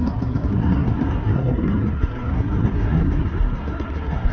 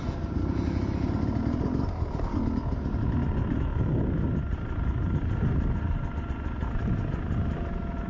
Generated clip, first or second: first